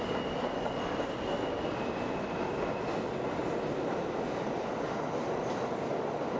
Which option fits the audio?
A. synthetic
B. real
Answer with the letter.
B